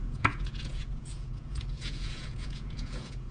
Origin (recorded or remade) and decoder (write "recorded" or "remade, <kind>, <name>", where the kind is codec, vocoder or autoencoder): remade, vocoder, Vocos